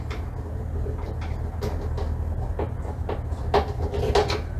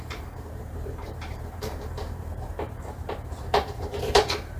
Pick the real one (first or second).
first